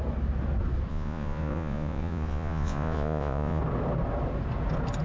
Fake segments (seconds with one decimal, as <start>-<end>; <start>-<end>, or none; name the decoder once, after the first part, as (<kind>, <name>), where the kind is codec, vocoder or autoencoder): 0.9-3.6 (vocoder, Vocos)